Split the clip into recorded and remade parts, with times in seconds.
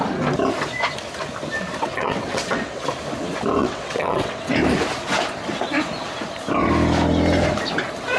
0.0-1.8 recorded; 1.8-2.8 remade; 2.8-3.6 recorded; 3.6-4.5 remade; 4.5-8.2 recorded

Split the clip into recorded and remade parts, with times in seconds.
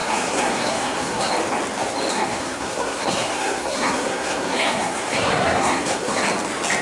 0.0-1.3 remade; 1.3-2.1 recorded; 2.1-6.2 remade; 6.2-6.8 recorded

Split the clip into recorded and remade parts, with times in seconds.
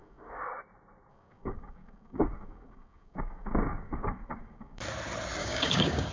0.0-0.5 remade; 0.5-1.1 recorded; 1.1-4.8 remade; 4.8-5.4 recorded; 5.4-6.1 remade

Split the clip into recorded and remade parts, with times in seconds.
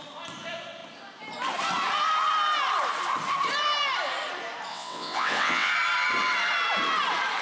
0.0-4.7 recorded; 4.7-5.7 remade; 5.7-7.4 recorded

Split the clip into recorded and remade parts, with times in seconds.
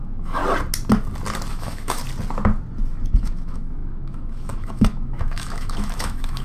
0.0-0.4 remade; 0.4-1.5 recorded; 1.5-2.0 remade; 2.0-3.2 recorded; 3.2-6.4 remade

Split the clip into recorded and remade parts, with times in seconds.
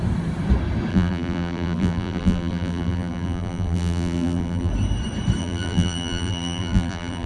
0.0-0.9 recorded; 0.9-4.7 remade; 4.7-5.4 recorded; 5.4-7.3 remade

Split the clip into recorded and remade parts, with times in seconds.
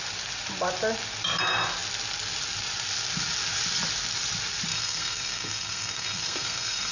0.0-4.7 recorded; 4.7-6.9 remade